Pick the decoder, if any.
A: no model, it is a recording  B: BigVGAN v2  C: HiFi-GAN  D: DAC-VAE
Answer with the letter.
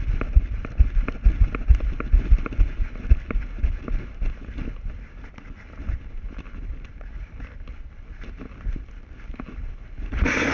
A